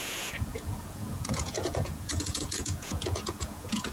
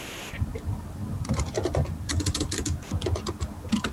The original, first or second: second